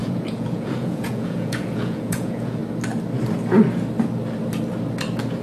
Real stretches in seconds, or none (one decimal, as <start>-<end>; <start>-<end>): 2.6-5.4